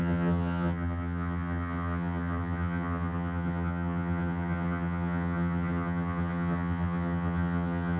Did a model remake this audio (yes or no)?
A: yes